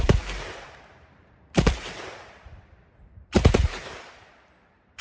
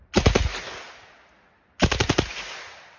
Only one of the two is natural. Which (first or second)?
second